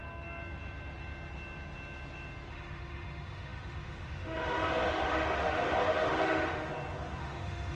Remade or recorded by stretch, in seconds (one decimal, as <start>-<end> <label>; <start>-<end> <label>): 0.0-2.5 recorded; 2.5-6.7 remade; 6.7-7.2 recorded; 7.2-7.8 remade